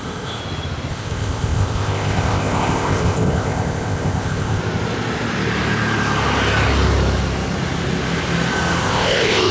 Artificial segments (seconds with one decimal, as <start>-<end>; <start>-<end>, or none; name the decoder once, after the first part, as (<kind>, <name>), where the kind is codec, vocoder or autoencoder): 0.0-0.4 (codec, ZipCodec); 0.9-4.6; 8.8-9.5